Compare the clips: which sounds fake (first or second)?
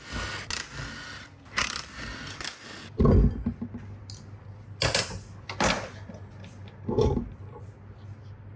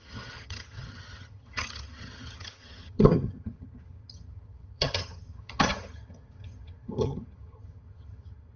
second